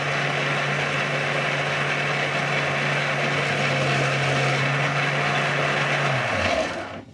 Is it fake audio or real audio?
real